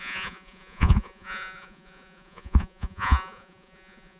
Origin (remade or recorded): remade